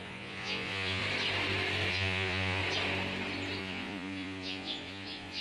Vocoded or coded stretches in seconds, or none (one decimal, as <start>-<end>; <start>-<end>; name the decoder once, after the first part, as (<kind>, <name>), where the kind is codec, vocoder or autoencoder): 0.0-1.0 (vocoder, Vocos); 1.9-2.6; 3.6-5.4